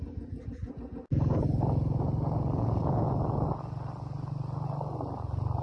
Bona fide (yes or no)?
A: yes